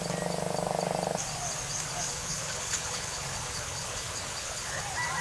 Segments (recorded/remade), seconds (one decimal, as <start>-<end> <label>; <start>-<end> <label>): 0.0-2.1 recorded; 2.1-4.8 remade; 4.8-5.2 recorded